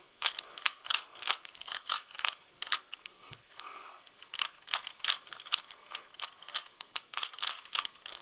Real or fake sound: fake